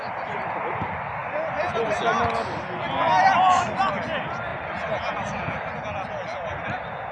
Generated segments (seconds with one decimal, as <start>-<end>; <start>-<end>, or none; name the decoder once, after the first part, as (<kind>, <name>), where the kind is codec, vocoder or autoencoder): none